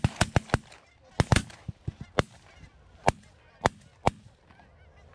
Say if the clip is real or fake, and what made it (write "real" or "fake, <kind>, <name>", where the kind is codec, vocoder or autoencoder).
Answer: real